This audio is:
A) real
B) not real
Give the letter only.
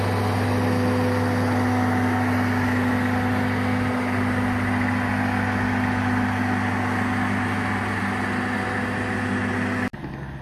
A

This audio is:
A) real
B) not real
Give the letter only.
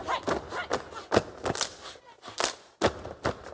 A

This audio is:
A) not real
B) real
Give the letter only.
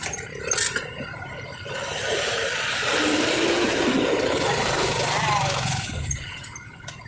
A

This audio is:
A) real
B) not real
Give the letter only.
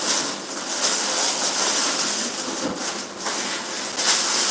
A